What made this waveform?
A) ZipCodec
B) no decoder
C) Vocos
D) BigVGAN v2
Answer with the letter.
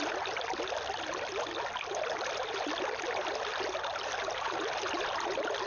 B